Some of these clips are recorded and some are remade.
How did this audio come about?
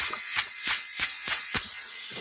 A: remade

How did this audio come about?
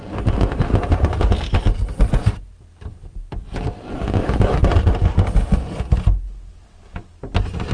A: recorded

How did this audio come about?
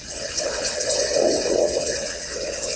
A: remade